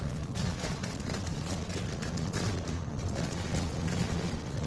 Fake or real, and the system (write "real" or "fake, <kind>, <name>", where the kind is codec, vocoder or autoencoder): fake, vocoder, Vocos